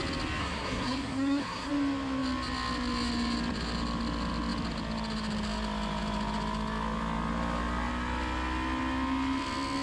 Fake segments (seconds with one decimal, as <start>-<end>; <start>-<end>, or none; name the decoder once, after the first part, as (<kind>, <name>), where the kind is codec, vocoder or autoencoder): 0.4-1.7 (codec, SNAC)